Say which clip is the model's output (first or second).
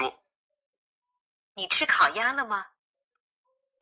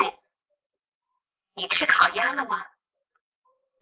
second